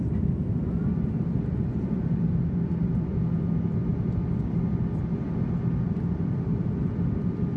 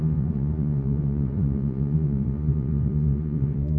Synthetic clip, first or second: second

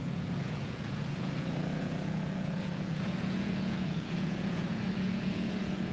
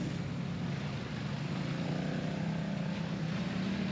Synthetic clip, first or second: first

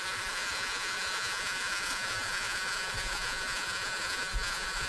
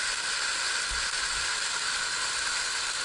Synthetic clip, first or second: first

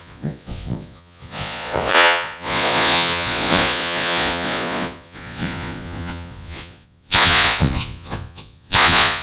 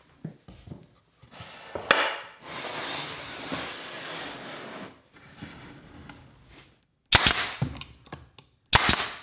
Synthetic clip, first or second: first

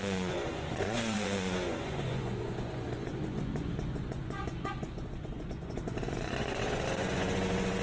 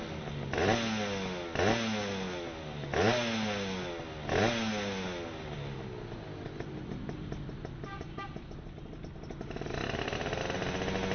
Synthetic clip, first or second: first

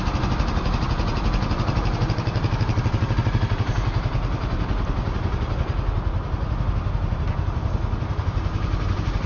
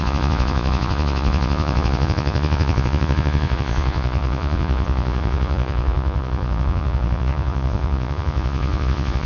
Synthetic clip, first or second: second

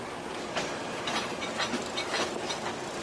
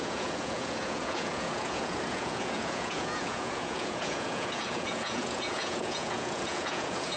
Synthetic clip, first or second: second